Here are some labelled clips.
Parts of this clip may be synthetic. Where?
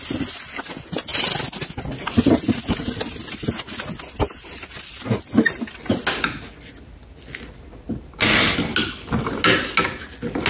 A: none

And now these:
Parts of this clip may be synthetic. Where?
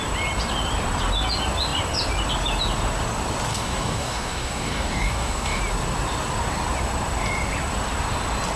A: 3.5-5.6 (codec, DAC)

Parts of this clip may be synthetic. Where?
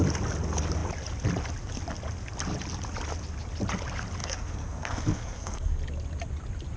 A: 4.2-5.8 (codec, SNAC)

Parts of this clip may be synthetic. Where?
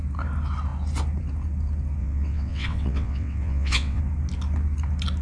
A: 2.0-4.0 (vocoder, WaveNeXt)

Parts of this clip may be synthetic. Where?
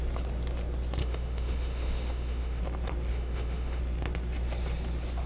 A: 1.0-2.6 (autoencoder, DAC-VAE); 3.1-3.8